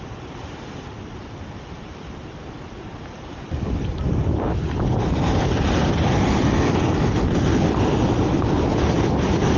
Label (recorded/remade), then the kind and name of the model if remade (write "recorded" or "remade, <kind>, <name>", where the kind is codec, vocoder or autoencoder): recorded